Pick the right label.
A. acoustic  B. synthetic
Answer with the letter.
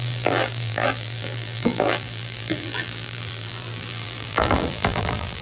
B